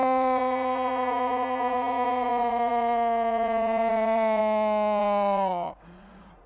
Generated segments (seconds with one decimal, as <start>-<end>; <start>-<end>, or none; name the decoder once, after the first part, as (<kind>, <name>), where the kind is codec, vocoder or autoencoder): 0.0-4.4 (vocoder, Vocos); 5.0-6.5